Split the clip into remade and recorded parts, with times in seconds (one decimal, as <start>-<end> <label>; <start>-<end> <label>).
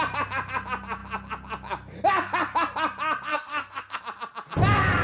0.0-3.3 recorded; 3.3-4.0 remade; 4.0-5.0 recorded